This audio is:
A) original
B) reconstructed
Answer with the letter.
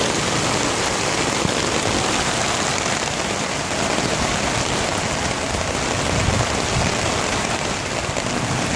A